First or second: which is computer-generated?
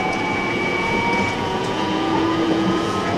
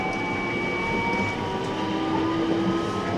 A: first